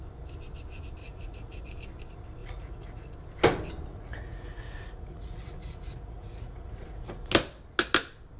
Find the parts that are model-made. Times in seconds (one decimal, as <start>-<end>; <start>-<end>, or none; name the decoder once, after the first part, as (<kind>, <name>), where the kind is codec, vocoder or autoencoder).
1.0-1.6 (vocoder, Vocos); 2.4-3.1; 3.9-7.3